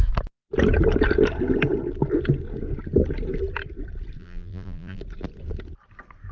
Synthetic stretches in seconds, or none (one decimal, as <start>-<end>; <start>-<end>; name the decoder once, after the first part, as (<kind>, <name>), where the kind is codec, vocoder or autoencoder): 4.2-5.0 (vocoder, BigVGAN v2)